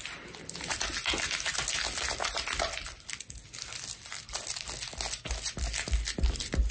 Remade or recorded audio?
recorded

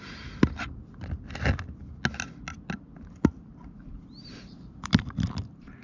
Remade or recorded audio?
recorded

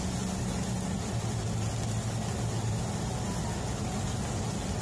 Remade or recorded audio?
recorded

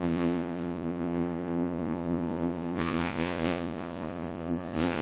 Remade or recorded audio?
remade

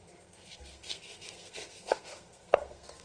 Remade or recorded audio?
remade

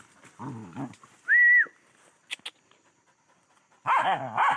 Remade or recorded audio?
recorded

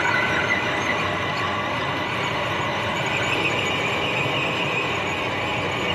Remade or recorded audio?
recorded